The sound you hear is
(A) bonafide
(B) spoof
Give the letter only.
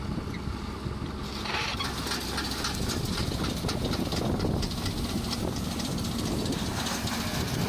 A